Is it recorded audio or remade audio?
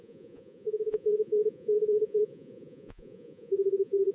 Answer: remade